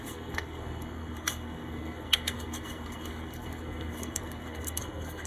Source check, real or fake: fake